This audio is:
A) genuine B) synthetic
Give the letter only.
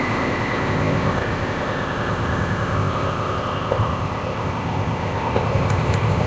B